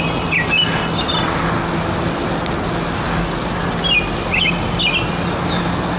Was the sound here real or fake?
real